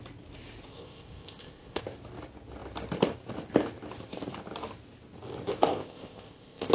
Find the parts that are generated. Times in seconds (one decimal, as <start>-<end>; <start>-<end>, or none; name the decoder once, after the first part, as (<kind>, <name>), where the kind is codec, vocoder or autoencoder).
0.7-1.8 (codec, ZipCodec); 5.7-6.7